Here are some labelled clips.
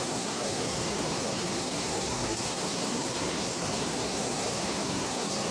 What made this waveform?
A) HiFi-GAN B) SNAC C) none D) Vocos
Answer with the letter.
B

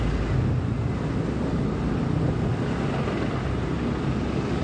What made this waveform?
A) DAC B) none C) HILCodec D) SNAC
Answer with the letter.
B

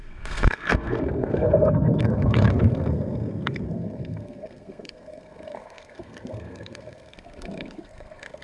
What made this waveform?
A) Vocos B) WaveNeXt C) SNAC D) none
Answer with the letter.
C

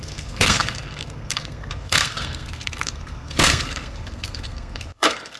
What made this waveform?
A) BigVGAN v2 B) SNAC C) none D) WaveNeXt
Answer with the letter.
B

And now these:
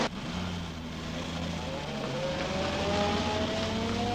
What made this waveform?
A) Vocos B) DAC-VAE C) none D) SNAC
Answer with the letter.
C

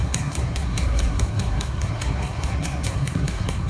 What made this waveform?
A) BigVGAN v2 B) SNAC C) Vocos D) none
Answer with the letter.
B